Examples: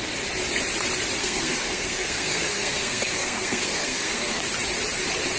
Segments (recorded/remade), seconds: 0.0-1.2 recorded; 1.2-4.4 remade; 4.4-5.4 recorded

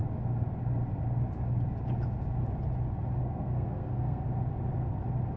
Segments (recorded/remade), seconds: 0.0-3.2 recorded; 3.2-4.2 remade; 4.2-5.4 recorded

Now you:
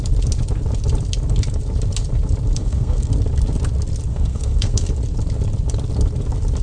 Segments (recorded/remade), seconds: 0.0-2.6 recorded; 2.6-3.1 remade; 3.1-4.1 recorded; 4.1-4.9 remade; 4.9-6.6 recorded

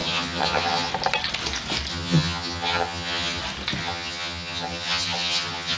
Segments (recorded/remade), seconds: 0.0-0.9 remade; 0.9-1.9 recorded; 1.9-3.4 remade; 3.4-3.8 recorded; 3.8-5.8 remade